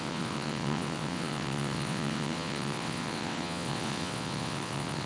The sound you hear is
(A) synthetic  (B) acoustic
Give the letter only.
A